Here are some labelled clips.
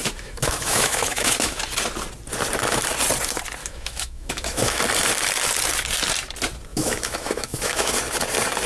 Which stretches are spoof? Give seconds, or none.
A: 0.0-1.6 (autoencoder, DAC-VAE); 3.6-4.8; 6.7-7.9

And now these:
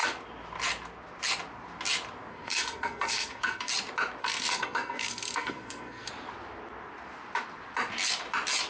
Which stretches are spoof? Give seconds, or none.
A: 2.3-3.7 (codec, SNAC); 4.2-6.1

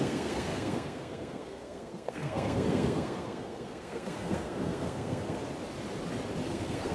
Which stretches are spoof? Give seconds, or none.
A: 0.0-5.4 (codec, SNAC); 6.5-6.9

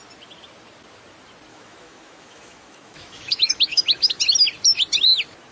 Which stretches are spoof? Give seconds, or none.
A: 1.5-4.2 (autoencoder, DAC-VAE)

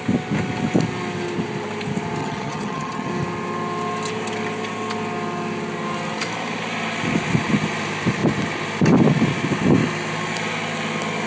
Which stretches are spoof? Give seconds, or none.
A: 2.2-3.1 (vocoder, HiFi-GAN)

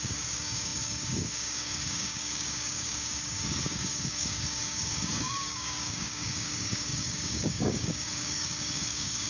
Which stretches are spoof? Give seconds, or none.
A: 0.0-9.3 (codec, DAC)

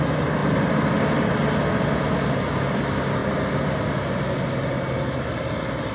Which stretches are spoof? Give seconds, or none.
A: none

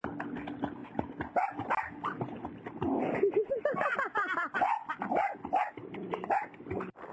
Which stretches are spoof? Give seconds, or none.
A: none